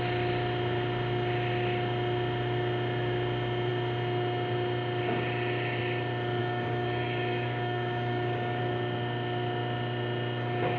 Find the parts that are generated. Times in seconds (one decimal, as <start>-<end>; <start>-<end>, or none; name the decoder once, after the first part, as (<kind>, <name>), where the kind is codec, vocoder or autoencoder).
6.4-8.6 (codec, DAC)